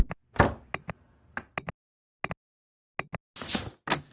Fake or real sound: real